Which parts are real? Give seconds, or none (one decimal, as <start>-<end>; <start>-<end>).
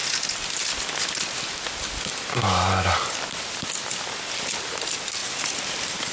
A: 0.0-6.1